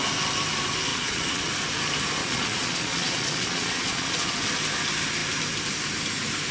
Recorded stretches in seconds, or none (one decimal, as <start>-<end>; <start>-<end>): 0.0-0.9; 1.5-2.2; 4.4-6.5